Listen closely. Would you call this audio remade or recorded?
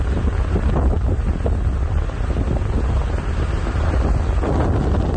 recorded